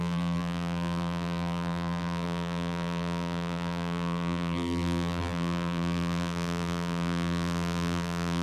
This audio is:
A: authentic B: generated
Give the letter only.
B